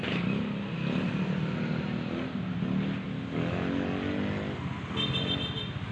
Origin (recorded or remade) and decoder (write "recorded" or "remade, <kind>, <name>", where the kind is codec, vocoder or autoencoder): recorded